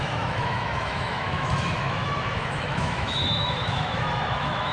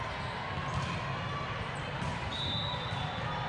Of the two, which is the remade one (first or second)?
first